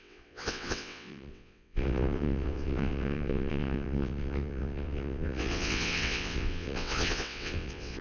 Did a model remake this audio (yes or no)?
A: yes